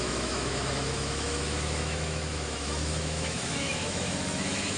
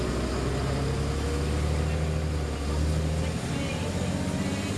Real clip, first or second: second